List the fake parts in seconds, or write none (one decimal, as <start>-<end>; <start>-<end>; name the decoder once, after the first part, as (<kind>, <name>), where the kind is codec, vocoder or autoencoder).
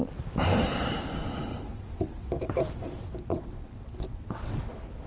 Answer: 1.5-2.3 (vocoder, WaveNeXt); 3.3-4.6